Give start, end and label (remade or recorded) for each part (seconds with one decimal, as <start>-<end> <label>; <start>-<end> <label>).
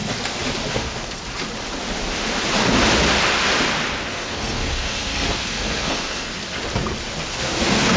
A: 0.0-0.7 recorded; 0.7-1.2 remade; 1.2-4.1 recorded; 4.1-6.3 remade; 6.3-7.3 recorded; 7.3-8.0 remade